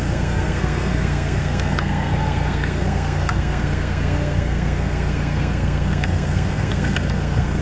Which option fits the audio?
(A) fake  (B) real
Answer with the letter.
A